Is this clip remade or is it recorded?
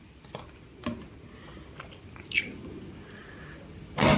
recorded